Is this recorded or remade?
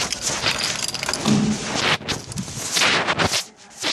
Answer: recorded